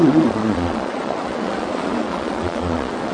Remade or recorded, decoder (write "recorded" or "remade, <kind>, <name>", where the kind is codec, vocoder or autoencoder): remade, vocoder, Vocos